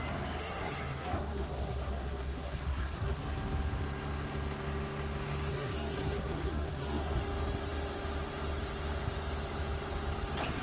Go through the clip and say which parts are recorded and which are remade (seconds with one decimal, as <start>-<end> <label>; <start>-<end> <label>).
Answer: 0.0-0.4 recorded; 0.4-3.2 remade; 3.2-5.5 recorded; 5.5-7.2 remade; 7.2-10.6 recorded

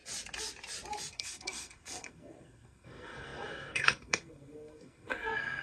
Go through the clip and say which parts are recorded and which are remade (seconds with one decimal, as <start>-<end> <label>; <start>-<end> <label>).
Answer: 0.0-1.1 recorded; 1.1-5.6 remade

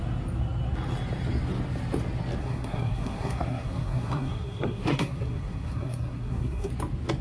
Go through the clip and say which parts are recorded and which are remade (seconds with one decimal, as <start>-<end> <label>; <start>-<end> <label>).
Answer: 0.0-2.4 recorded; 2.4-6.7 remade; 6.7-7.2 recorded

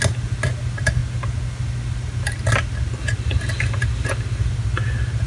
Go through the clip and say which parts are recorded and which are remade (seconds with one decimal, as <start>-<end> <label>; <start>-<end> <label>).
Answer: 0.0-5.3 recorded

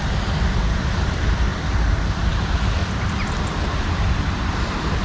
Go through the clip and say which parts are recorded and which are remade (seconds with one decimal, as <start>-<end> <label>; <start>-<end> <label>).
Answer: 0.0-1.5 remade; 1.5-2.1 recorded; 2.1-2.8 remade; 2.8-3.6 recorded; 3.6-5.0 remade